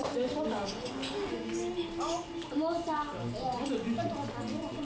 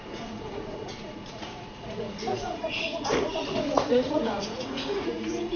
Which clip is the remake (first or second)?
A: second